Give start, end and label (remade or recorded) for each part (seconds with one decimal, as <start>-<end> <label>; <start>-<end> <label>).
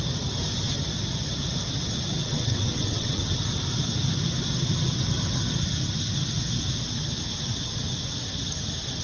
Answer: 0.0-2.2 recorded; 2.2-3.2 remade; 3.2-9.0 recorded